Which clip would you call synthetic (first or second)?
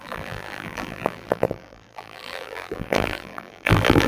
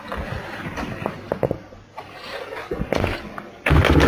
first